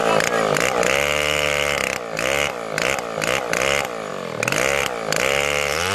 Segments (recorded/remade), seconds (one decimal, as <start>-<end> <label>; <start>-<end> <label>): 0.0-5.9 recorded